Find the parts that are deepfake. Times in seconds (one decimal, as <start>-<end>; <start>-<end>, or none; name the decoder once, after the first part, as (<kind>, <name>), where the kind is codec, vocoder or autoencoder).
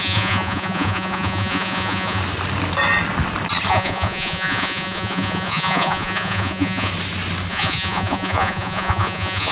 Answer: 0.0-2.2 (vocoder, Vocos); 3.7-6.9; 7.5-9.5